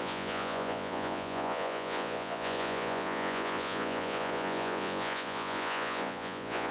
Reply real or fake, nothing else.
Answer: fake